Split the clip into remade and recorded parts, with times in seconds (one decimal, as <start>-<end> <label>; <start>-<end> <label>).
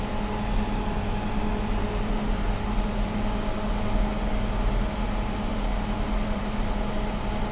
0.0-7.5 recorded